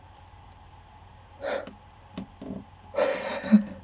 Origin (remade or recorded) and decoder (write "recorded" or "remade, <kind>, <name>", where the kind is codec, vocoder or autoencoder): recorded